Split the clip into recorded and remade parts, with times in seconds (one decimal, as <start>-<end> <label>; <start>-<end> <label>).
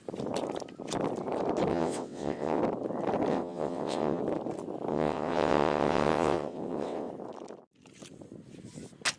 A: 0.0-1.7 recorded; 1.7-2.6 remade; 2.6-3.3 recorded; 3.3-4.2 remade; 4.2-4.9 recorded; 4.9-7.1 remade; 7.1-9.2 recorded